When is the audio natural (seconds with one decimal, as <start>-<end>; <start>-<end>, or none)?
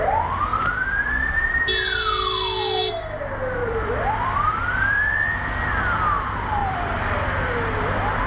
0.0-3.6; 5.3-6.6; 7.5-8.3